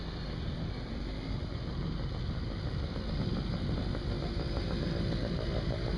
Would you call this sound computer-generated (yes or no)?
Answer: no